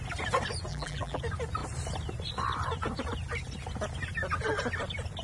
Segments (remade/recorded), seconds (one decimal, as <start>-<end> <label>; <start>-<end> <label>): 0.0-0.7 recorded; 0.7-1.2 remade; 1.2-5.2 recorded